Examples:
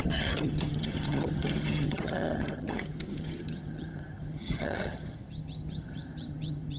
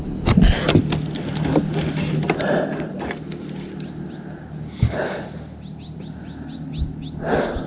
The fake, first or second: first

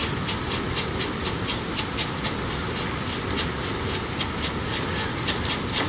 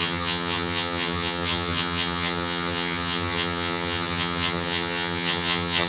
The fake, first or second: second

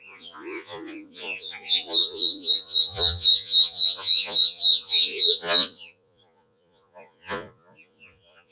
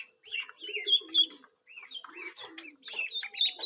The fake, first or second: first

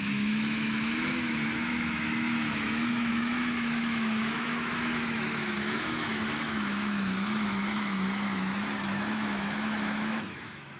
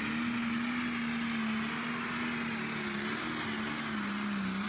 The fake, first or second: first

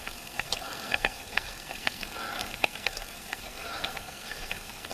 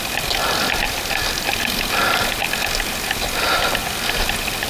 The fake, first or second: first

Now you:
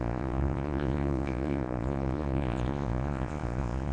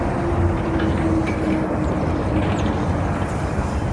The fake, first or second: first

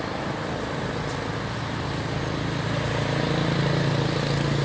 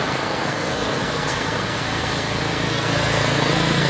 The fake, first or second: second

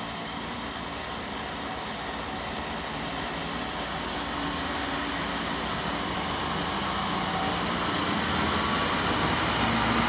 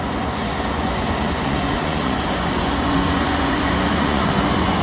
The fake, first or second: second